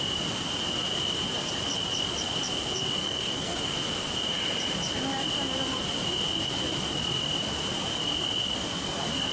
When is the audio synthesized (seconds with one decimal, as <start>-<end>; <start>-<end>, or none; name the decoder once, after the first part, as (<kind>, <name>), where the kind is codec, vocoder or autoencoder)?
3.0-3.6 (codec, SNAC)